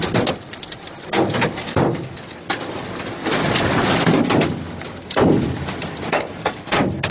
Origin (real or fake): real